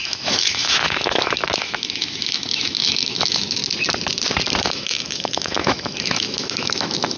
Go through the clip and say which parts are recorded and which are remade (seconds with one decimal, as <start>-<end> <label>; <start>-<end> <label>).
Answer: 0.0-3.6 remade; 3.6-4.6 recorded; 4.6-7.2 remade